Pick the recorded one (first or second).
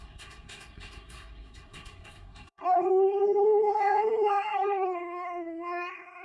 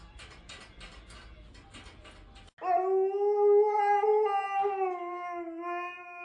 second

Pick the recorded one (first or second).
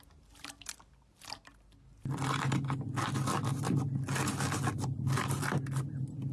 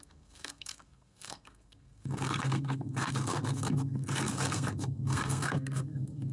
first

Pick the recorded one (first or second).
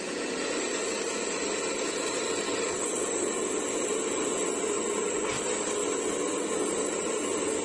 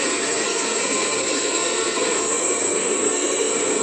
first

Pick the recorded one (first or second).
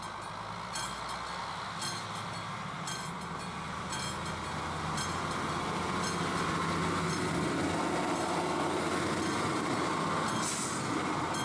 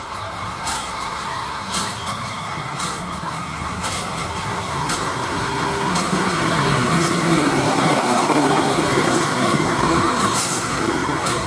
first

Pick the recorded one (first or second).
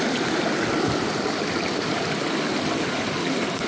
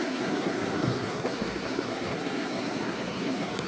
first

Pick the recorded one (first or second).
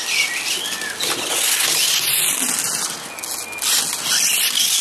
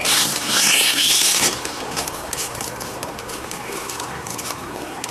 first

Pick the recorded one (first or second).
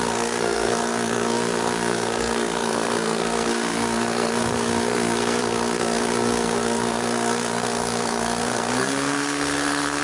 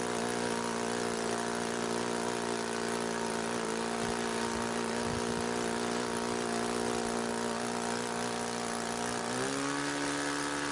second